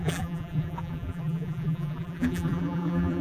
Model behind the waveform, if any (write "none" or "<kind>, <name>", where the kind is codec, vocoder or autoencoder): vocoder, BigVGAN v2